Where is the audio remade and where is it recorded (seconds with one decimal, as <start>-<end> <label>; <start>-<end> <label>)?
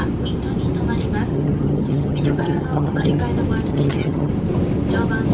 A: 0.0-1.3 recorded; 1.3-3.2 remade; 3.2-3.7 recorded; 3.7-4.3 remade; 4.3-5.3 recorded